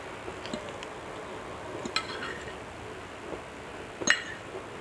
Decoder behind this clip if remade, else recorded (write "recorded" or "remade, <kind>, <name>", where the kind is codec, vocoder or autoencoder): recorded